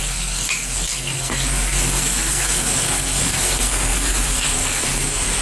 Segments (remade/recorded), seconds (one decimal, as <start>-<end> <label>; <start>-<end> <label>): 0.0-5.4 remade